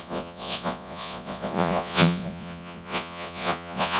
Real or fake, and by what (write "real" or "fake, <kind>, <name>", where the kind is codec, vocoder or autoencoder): fake, vocoder, Vocos